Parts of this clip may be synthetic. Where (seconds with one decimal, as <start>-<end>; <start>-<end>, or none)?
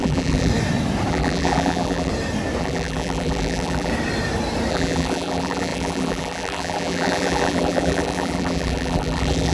0.0-0.5; 1.1-2.1; 2.6-3.9; 4.7-9.5